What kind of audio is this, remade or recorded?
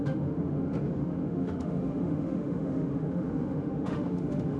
remade